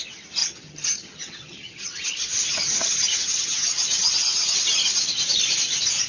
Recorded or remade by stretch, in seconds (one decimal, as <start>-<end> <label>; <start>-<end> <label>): 0.0-0.4 recorded; 0.4-4.1 remade; 4.1-6.1 recorded